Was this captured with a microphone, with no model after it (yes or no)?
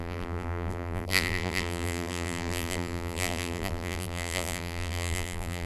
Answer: no